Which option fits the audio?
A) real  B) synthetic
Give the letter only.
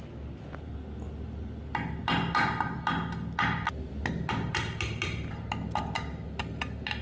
A